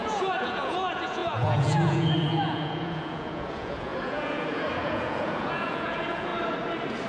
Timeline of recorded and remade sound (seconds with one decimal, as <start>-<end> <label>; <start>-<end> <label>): 0.0-6.3 remade; 6.3-7.1 recorded